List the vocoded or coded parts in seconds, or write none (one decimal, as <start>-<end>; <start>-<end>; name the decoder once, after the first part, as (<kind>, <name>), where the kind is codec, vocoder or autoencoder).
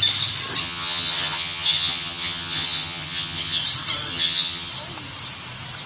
0.6-3.6 (vocoder, HiFi-GAN); 4.1-4.7